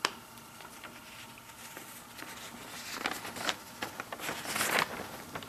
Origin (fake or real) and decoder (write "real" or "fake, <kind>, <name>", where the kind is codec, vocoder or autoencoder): real